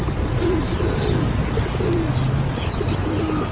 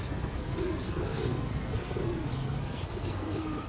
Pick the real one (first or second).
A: first